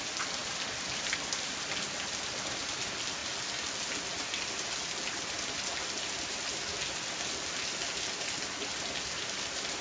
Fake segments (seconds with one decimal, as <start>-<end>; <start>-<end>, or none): none